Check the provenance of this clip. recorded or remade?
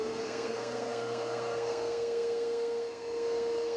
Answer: remade